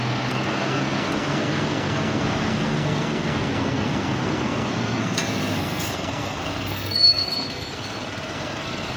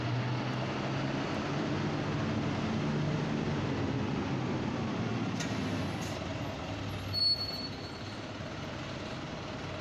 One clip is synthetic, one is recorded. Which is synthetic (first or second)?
first